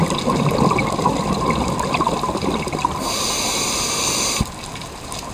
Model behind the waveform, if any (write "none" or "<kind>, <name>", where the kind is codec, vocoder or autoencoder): none